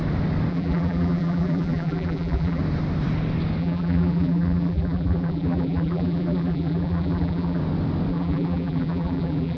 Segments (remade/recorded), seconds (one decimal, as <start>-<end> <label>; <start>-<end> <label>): 0.0-0.5 recorded; 0.5-2.6 remade; 2.6-3.6 recorded; 3.6-7.6 remade; 7.6-8.1 recorded; 8.1-9.6 remade